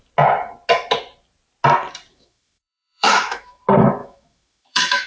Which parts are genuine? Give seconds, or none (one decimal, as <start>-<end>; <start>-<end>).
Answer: 0.0-2.1; 3.6-4.0